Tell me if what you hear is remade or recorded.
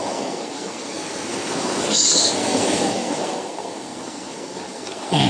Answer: remade